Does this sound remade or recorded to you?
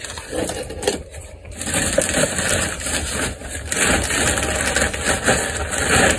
recorded